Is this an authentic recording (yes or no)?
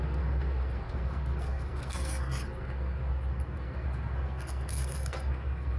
no